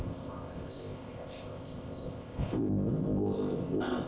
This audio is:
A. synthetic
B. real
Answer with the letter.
A